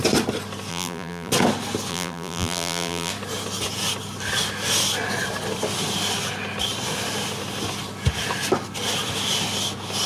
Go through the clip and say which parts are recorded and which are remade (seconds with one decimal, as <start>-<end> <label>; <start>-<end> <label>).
0.0-0.7 recorded; 0.7-1.3 remade; 1.3-1.9 recorded; 1.9-3.1 remade; 3.1-10.1 recorded